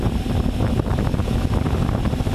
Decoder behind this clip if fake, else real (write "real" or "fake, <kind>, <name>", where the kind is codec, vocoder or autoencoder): real